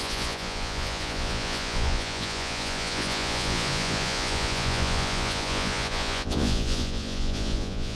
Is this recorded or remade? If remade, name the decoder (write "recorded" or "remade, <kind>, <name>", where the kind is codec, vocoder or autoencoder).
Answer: remade, vocoder, Vocos